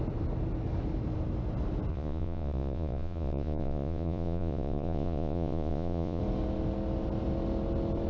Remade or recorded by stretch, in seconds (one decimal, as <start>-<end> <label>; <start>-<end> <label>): 0.0-1.9 recorded; 1.9-6.2 remade; 6.2-8.1 recorded